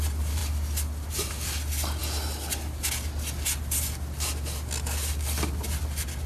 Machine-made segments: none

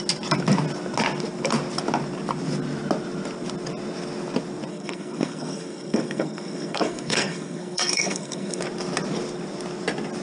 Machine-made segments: 4.7-8.6

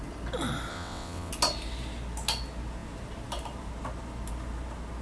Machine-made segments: 0.7-1.3

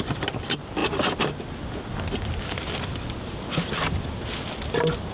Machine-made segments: none

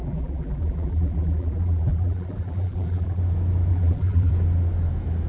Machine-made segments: 0.0-3.2; 3.7-4.3